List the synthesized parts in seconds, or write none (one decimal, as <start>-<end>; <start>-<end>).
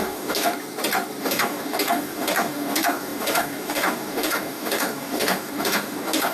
0.0-0.5; 1.2-6.3